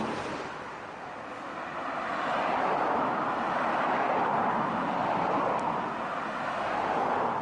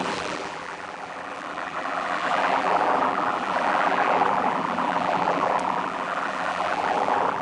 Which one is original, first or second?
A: first